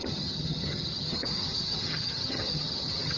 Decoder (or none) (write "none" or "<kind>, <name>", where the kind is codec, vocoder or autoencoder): vocoder, HiFi-GAN